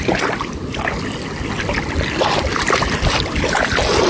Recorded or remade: recorded